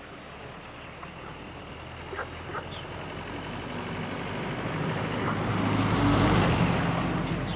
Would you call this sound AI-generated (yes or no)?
no